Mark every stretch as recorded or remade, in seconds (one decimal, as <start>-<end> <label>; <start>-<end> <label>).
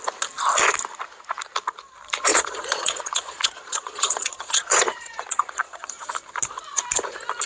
0.0-2.3 recorded; 2.3-6.1 remade; 6.1-7.5 recorded